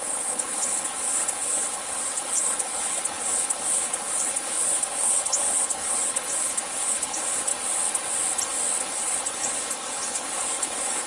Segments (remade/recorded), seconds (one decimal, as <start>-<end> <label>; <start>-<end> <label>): 0.0-7.5 remade; 7.5-8.8 recorded; 8.8-11.1 remade